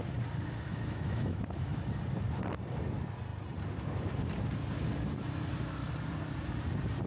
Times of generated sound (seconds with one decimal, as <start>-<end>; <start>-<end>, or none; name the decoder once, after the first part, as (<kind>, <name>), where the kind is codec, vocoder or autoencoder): 0.7-1.8 (autoencoder, DAC-VAE)